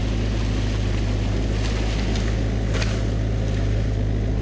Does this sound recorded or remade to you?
recorded